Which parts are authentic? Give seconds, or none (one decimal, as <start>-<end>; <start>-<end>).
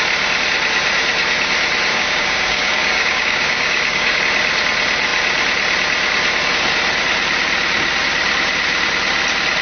0.0-1.9; 4.2-9.6